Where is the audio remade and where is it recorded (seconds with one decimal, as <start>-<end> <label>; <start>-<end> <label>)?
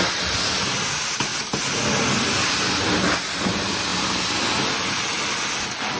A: 0.0-6.0 recorded